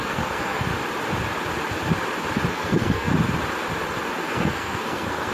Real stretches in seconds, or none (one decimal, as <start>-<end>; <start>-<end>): 0.7-2.5; 3.1-4.3